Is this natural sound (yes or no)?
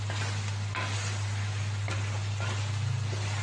yes